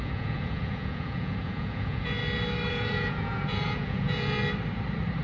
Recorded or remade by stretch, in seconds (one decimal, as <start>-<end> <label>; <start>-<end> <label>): 0.0-2.2 remade; 2.2-2.7 recorded; 2.7-4.4 remade; 4.4-5.2 recorded